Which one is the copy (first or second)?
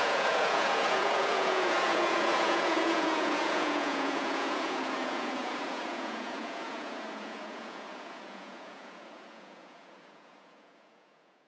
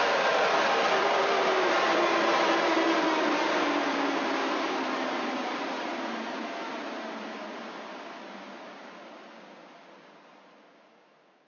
first